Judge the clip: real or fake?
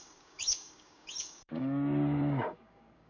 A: fake